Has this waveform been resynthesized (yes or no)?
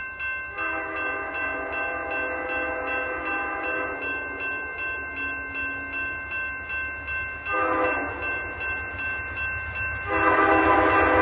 no